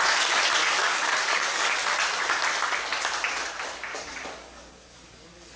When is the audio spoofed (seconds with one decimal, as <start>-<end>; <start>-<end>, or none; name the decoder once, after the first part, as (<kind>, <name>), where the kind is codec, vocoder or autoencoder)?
0.6-1.7 (codec, DAC); 3.9-5.6